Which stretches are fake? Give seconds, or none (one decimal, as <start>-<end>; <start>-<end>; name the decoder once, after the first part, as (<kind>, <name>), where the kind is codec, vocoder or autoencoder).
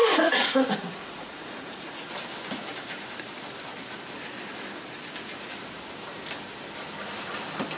0.0-2.1 (vocoder, Vocos)